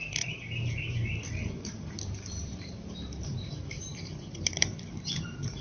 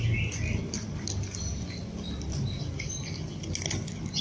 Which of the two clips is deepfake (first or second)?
first